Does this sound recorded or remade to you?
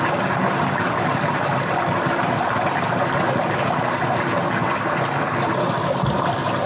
recorded